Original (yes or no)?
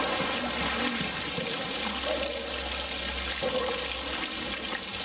yes